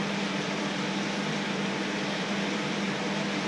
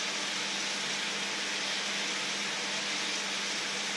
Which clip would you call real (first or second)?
second